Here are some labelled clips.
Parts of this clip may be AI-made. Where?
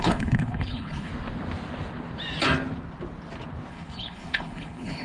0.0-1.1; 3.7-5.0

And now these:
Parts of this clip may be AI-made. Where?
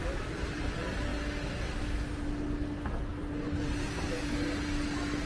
none